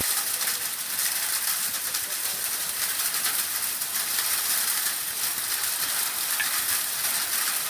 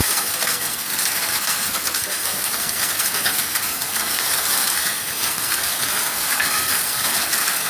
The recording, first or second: first